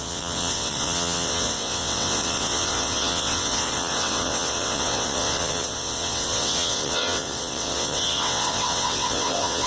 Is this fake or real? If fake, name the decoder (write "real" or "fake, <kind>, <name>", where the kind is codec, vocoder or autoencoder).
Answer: fake, vocoder, WaveNeXt